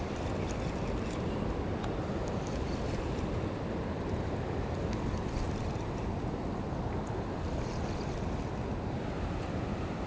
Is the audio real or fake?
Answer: real